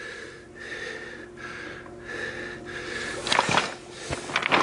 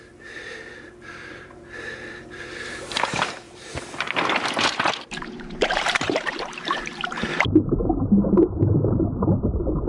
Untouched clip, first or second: first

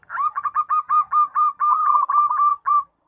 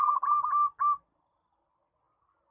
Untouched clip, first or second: second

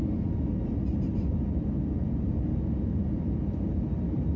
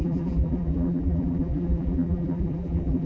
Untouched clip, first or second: first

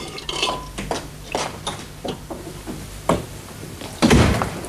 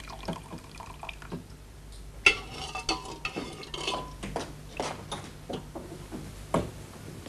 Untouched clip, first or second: second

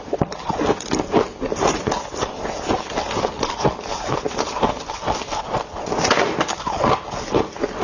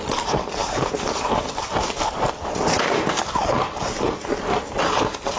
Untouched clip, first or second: first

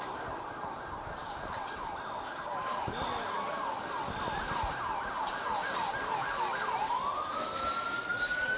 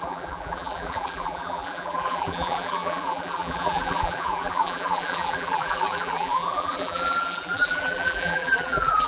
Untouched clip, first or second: first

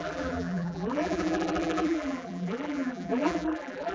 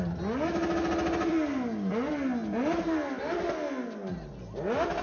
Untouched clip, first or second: second